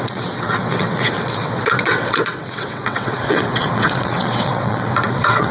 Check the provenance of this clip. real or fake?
fake